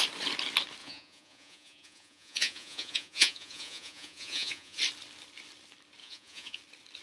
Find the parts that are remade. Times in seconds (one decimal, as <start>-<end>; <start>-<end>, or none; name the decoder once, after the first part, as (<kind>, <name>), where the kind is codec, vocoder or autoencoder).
0.8-4.8 (vocoder, Vocos); 6.0-6.6